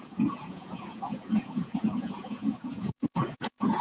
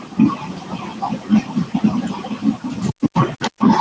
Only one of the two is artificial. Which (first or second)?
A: first